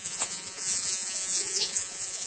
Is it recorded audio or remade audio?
remade